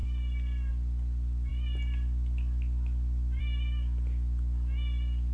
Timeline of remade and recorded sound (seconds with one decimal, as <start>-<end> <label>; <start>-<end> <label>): 0.0-5.3 recorded